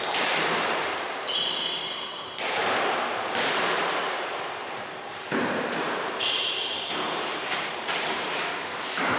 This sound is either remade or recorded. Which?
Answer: remade